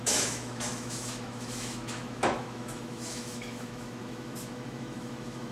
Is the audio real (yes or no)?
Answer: no